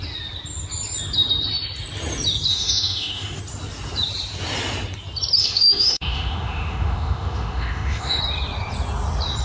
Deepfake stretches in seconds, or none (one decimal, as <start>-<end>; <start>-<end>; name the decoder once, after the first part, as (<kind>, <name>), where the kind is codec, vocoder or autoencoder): 2.5-3.4 (autoencoder, DAC-VAE); 5.4-8.2